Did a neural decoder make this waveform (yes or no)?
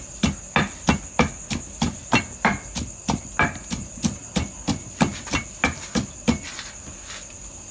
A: no